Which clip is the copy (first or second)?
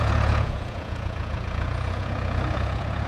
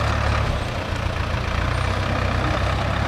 first